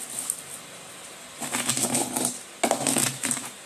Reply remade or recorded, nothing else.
recorded